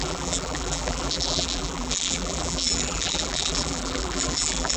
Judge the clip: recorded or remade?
remade